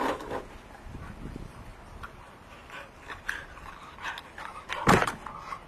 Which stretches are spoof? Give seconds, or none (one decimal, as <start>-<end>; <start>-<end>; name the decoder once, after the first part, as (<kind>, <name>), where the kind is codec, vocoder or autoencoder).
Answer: 1.7-4.6 (vocoder, BigVGAN v2)